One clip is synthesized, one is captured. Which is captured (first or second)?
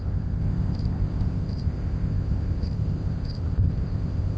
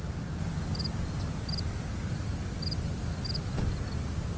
second